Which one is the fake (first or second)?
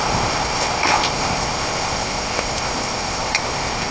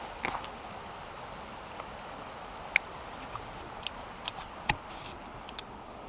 first